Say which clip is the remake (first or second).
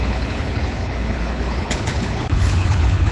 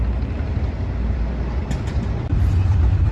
first